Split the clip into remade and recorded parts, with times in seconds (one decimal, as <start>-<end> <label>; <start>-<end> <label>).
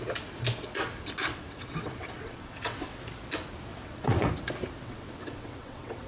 0.0-1.3 recorded; 1.3-3.0 remade; 3.0-3.7 recorded; 3.7-4.3 remade; 4.3-4.8 recorded; 4.8-6.1 remade